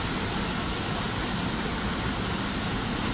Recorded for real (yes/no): yes